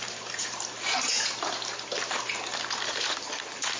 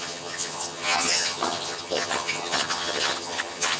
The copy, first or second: second